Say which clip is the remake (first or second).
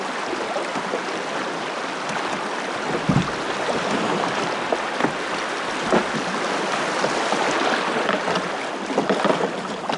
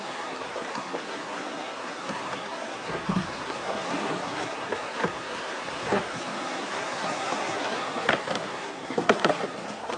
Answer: second